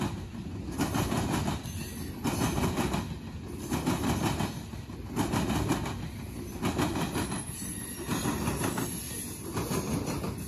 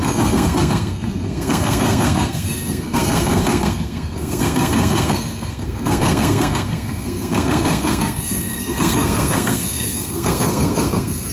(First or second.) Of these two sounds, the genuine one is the first